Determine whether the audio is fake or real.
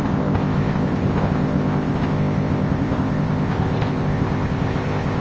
fake